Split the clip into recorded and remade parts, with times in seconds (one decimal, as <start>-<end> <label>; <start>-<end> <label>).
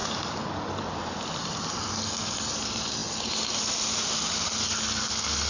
0.0-1.8 remade; 1.8-5.5 recorded